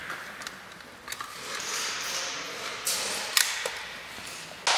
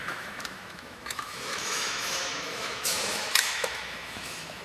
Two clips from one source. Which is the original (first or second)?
first